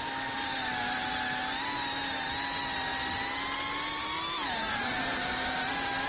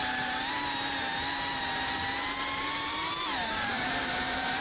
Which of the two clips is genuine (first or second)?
first